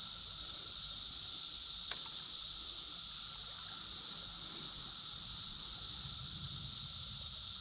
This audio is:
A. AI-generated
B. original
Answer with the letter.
B